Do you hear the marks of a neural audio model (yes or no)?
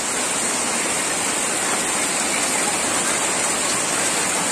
no